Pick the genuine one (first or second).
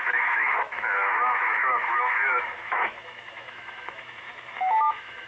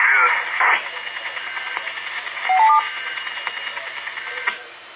second